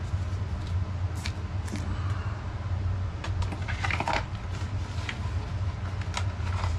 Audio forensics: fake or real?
real